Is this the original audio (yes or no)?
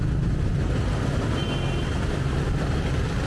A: yes